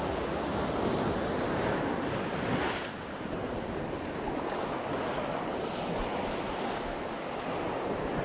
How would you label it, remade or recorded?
recorded